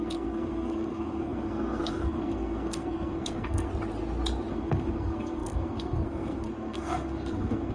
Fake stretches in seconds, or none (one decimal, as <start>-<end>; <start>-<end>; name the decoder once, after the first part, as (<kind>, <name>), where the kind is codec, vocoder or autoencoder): 0.0-3.7 (codec, SNAC); 4.5-7.7